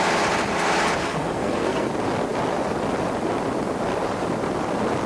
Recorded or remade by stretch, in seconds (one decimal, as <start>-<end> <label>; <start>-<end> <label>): 0.0-1.0 recorded; 1.0-1.9 remade; 1.9-5.1 recorded